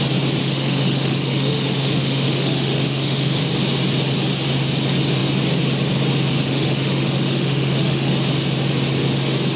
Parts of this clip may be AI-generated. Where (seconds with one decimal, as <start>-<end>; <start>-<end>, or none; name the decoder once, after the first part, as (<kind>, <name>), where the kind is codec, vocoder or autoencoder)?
0.4-3.4 (autoencoder, DAC-VAE); 6.5-8.1